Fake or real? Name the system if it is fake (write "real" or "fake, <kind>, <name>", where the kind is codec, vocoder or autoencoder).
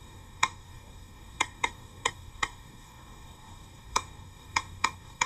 fake, codec, DAC